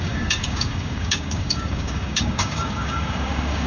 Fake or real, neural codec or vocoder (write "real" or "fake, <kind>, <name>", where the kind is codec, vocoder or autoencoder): fake, codec, DAC